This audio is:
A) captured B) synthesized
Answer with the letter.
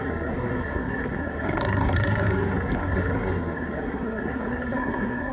B